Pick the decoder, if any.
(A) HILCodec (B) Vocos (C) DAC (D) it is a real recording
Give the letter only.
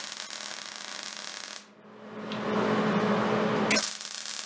D